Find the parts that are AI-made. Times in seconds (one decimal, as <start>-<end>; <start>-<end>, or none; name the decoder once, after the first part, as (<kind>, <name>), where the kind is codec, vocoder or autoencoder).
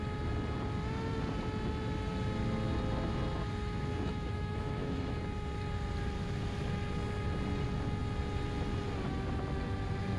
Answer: 4.1-5.2 (autoencoder, DAC-VAE)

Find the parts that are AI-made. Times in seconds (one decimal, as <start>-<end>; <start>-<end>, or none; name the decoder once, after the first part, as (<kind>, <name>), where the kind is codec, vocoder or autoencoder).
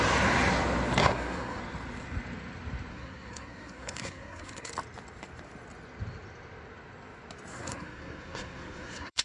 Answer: 1.0-1.6 (codec, SNAC); 2.9-4.7; 7.5-9.2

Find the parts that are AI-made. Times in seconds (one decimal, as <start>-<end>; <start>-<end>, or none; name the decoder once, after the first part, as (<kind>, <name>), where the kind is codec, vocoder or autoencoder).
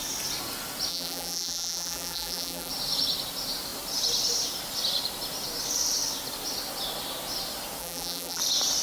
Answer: 0.9-2.7 (vocoder, BigVGAN v2); 7.8-8.4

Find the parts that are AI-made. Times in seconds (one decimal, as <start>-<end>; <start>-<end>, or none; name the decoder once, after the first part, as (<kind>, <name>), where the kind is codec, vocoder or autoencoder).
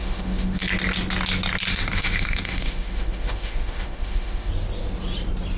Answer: 0.0-0.6 (autoencoder, DAC-VAE); 1.7-4.5